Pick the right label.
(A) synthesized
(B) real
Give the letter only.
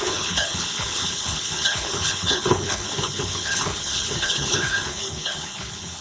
A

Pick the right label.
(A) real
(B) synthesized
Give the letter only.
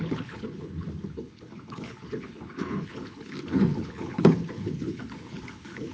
B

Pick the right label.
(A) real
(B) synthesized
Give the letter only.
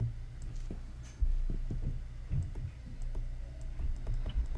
A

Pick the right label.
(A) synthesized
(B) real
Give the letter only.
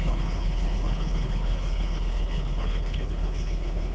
A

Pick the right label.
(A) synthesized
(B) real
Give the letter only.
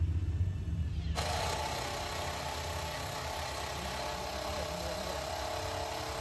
B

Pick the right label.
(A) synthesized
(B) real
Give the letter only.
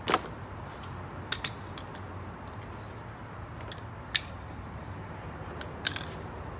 B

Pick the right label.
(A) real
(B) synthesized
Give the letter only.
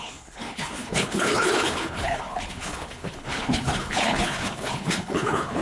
B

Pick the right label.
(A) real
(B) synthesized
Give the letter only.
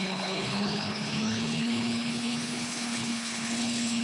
B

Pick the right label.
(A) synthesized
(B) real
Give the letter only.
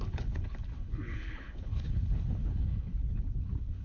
A